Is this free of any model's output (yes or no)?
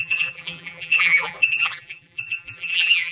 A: no